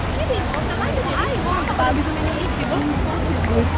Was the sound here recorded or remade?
recorded